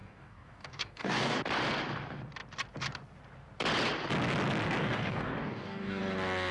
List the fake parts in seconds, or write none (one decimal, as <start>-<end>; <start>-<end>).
0.0-1.4; 4.8-6.0